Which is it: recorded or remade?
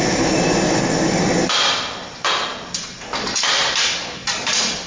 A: recorded